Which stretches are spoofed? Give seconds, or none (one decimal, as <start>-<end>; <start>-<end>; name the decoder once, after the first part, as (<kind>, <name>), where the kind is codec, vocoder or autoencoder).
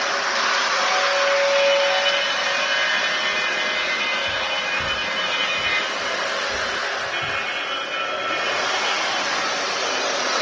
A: none